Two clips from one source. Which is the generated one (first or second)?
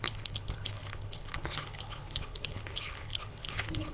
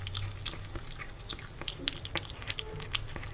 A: first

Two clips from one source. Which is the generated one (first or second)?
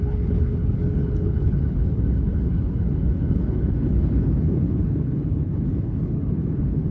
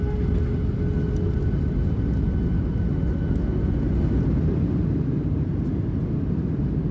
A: first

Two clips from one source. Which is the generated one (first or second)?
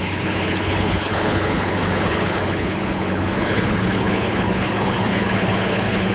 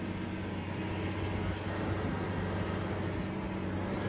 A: first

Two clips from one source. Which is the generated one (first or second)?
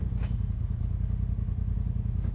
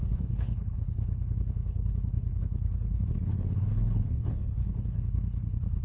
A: second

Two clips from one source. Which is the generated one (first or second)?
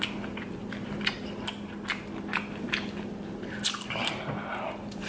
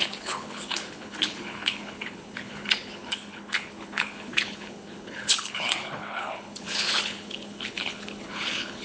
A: second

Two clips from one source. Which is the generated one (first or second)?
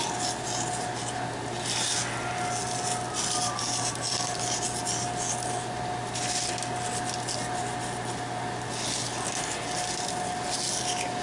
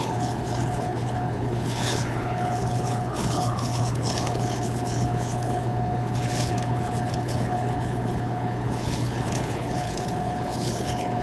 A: second